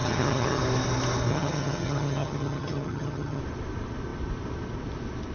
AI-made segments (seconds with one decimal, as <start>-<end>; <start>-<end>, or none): 0.0-0.6; 1.3-3.4